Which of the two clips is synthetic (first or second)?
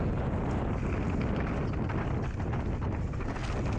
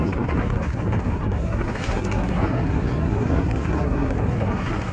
second